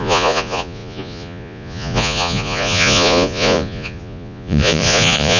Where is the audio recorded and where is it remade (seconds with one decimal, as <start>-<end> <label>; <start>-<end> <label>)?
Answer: 0.0-5.4 remade